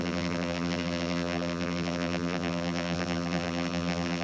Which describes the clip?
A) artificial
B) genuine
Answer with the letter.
A